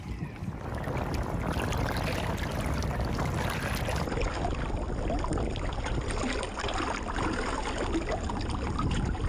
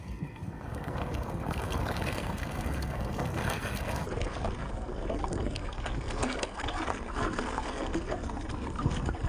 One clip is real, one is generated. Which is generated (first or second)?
second